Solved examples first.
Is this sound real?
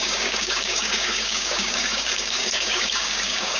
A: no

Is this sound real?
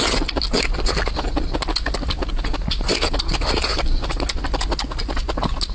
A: yes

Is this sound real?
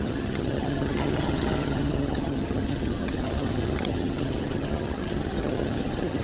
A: no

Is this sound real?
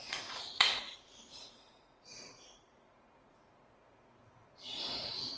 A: no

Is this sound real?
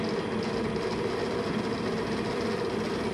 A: yes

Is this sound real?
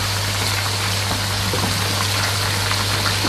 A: yes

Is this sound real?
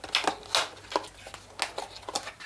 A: yes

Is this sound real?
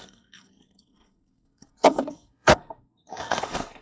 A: no